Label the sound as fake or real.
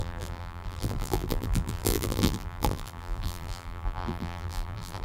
fake